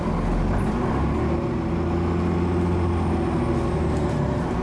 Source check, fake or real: real